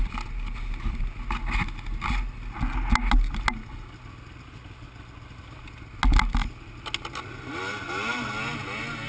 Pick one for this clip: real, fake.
real